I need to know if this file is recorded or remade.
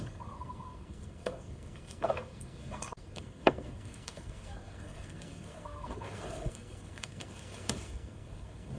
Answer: remade